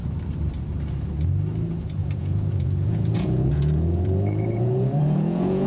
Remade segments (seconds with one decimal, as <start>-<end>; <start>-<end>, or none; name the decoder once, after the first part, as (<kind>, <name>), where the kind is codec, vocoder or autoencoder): 2.0-5.7 (vocoder, Vocos)